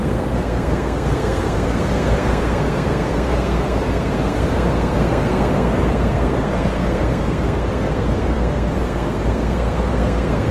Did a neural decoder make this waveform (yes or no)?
yes